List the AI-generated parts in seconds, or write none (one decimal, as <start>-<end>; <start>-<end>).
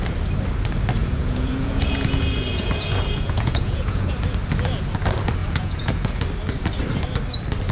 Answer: 1.0-4.2; 5.4-6.2